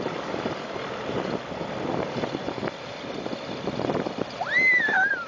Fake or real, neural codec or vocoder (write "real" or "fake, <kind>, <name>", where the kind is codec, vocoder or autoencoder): real